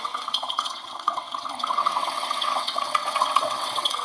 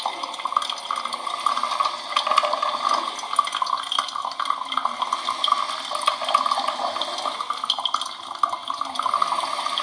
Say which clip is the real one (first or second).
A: second